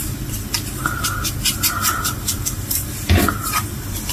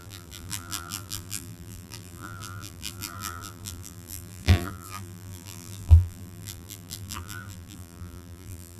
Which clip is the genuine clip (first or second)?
first